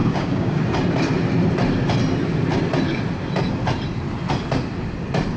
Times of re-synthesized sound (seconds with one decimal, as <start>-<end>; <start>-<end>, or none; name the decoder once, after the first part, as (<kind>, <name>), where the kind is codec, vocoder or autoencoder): 0.0-0.6 (codec, DAC)